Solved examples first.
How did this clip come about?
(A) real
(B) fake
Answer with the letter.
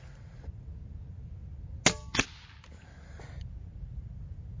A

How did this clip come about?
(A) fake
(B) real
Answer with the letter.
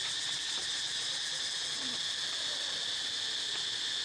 B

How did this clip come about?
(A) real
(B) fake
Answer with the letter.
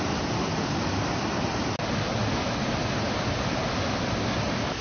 A